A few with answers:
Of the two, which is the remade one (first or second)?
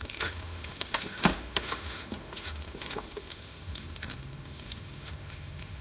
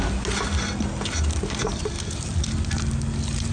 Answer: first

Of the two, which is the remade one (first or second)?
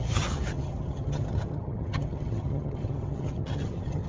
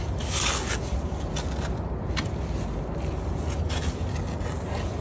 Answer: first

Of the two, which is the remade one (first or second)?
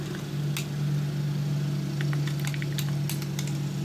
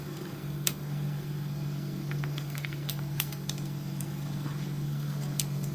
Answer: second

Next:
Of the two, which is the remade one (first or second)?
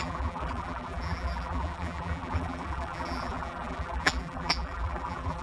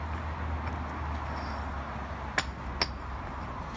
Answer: first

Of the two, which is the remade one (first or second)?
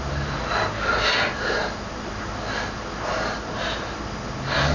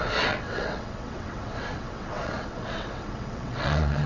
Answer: second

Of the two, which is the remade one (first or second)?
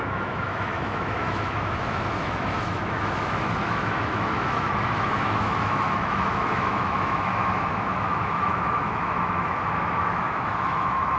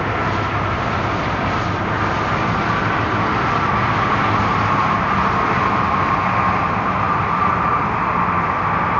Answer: first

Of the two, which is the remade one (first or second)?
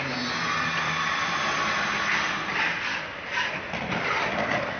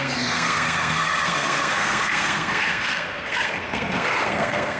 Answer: second